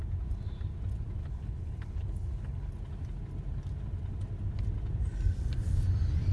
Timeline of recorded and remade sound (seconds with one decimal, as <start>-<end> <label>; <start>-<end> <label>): 0.0-1.2 recorded; 1.2-2.7 remade; 2.7-6.3 recorded